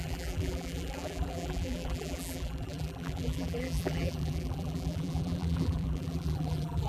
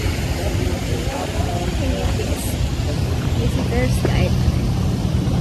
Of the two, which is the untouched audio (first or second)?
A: second